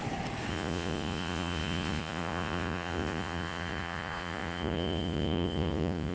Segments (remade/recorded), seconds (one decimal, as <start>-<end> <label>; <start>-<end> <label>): 0.0-0.5 recorded; 0.5-6.1 remade